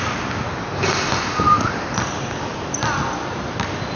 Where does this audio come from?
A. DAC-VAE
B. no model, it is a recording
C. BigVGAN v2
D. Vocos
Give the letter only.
B